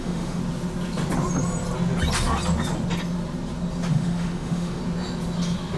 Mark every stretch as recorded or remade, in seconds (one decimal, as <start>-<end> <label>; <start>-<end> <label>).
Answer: 0.0-0.4 remade; 0.4-3.9 recorded; 3.9-4.8 remade; 4.8-5.8 recorded